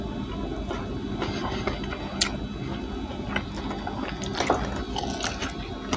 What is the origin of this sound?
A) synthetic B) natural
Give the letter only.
B